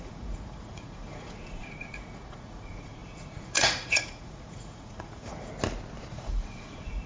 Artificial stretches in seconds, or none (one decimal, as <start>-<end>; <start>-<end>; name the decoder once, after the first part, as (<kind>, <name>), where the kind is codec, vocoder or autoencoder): 0.0-5.5 (vocoder, Vocos); 6.1-7.1

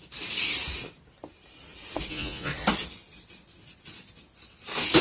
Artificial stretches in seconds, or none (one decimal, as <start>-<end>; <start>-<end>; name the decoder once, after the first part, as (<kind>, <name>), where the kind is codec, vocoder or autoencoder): 2.1-2.5 (vocoder, Vocos)

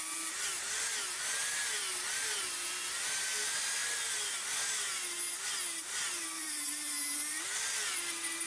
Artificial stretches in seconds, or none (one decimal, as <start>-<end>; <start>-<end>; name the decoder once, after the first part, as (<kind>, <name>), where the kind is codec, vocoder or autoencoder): none

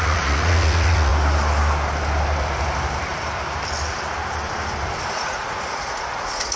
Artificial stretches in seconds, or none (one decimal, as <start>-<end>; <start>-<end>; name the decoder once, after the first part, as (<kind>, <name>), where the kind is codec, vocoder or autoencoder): 0.0-1.1 (vocoder, Vocos); 5.1-6.6

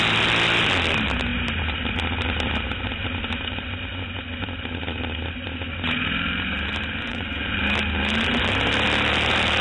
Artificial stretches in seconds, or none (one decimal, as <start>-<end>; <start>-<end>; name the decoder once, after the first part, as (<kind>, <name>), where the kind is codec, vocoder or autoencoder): 7.1-7.6 (vocoder, Vocos)

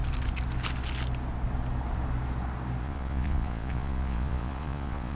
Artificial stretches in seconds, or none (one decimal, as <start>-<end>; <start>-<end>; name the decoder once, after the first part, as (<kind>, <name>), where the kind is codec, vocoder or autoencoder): 2.8-5.1 (vocoder, Vocos)